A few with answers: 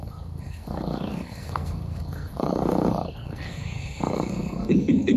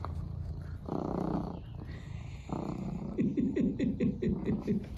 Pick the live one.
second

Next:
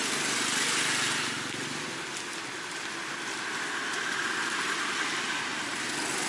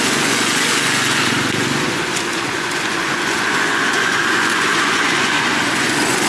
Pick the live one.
first